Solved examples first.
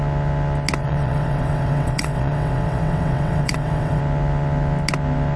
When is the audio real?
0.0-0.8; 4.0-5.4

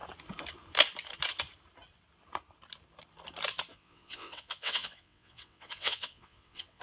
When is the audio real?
0.0-3.7

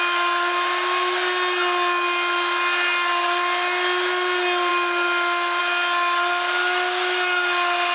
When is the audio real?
0.0-7.9

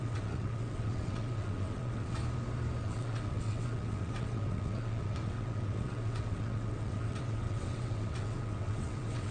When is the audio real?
2.2-2.8

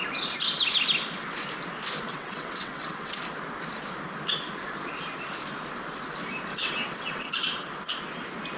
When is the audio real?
0.0-2.1; 3.2-6.5; 7.3-8.6

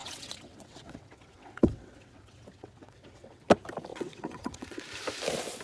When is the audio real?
3.4-3.9; 4.8-5.6